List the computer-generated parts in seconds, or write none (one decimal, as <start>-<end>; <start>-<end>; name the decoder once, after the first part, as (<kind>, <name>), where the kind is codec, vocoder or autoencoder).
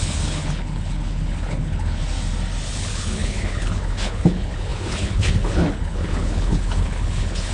0.0-2.0 (codec, HILCodec); 2.7-7.5